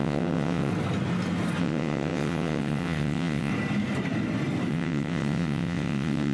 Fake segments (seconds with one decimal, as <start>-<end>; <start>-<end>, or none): 0.0-0.7; 1.6-3.5; 4.7-6.3